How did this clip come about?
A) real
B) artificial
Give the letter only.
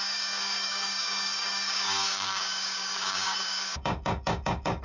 B